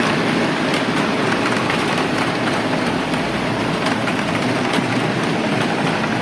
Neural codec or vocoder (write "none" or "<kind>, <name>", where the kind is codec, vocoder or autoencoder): vocoder, BigVGAN v2